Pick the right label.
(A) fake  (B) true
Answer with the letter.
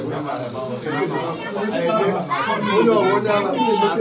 B